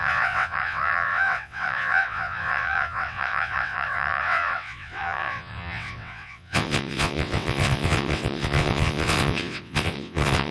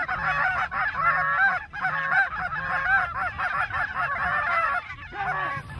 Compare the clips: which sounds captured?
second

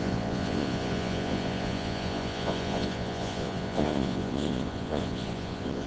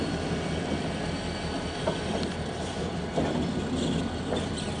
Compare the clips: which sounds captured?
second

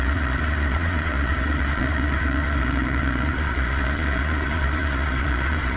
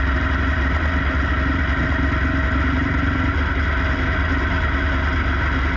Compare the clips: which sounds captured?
second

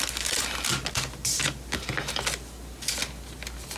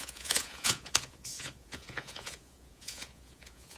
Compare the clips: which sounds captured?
first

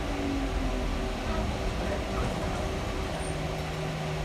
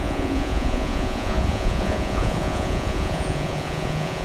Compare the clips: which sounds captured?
first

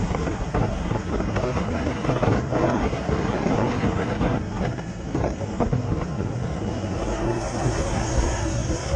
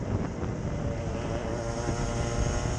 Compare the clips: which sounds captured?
second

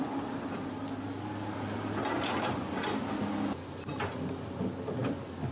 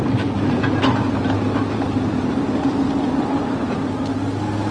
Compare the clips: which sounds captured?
first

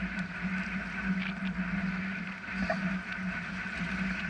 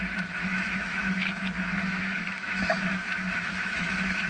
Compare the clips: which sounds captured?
first